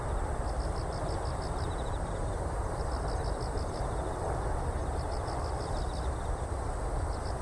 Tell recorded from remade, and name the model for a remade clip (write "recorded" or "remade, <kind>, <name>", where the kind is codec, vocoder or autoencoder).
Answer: recorded